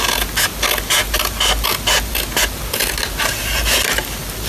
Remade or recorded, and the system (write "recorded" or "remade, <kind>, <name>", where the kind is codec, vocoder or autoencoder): recorded